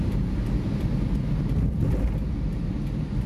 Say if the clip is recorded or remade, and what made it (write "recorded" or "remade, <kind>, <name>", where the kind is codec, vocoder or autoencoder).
recorded